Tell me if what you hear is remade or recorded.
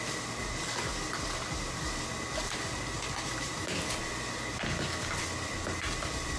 recorded